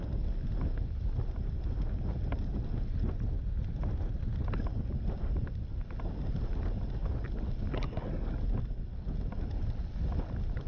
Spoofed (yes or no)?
no